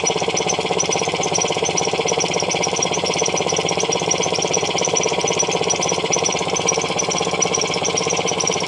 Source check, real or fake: fake